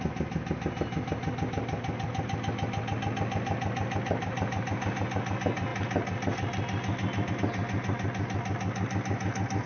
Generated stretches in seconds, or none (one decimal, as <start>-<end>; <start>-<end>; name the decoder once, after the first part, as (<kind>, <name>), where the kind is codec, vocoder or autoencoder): none